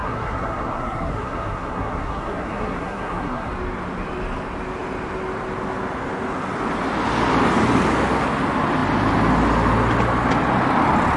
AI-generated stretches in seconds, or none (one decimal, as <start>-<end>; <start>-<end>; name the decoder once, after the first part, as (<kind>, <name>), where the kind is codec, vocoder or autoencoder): 0.0-3.5 (codec, SNAC)